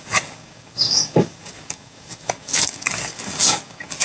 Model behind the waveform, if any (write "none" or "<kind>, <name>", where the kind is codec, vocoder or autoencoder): codec, DAC